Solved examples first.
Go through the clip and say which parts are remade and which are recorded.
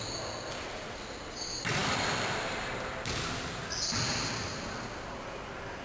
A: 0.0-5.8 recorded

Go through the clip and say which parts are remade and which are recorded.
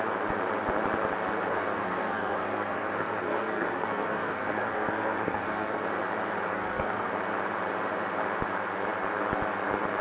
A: 0.0-1.5 recorded; 1.5-5.8 remade; 5.8-6.5 recorded; 6.5-7.1 remade; 7.1-10.0 recorded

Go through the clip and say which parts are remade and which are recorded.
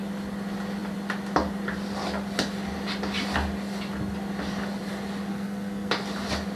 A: 0.0-5.3 recorded; 5.3-5.9 remade; 5.9-6.6 recorded